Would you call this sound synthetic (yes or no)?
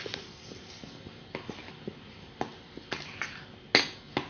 no